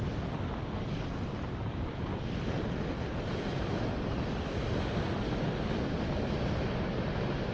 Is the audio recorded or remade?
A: recorded